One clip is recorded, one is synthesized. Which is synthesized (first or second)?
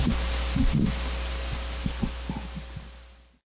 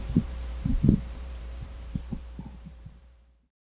second